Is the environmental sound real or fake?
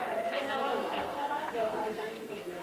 fake